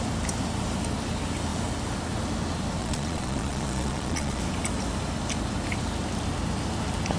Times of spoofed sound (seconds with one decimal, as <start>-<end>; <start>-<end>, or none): 2.8-4.4